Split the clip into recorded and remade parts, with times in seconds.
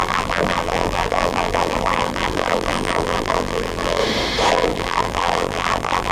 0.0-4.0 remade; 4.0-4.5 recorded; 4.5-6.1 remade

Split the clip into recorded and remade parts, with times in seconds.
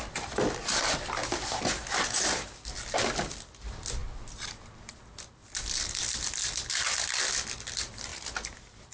0.0-8.9 recorded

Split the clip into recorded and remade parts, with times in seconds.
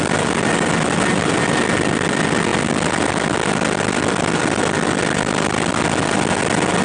0.0-6.8 recorded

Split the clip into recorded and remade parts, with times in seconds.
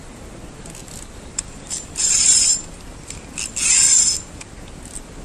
0.0-0.8 recorded; 0.8-2.7 remade; 2.7-5.2 recorded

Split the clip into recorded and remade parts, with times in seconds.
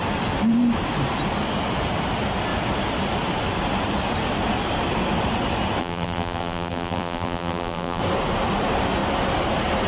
0.0-5.8 recorded; 5.8-8.0 remade; 8.0-9.9 recorded